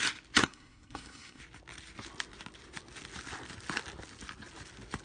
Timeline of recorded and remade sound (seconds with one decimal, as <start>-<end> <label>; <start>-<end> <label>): 0.0-0.4 recorded; 0.4-1.4 remade; 1.4-5.0 recorded